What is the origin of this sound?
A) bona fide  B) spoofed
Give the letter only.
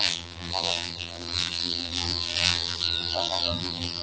B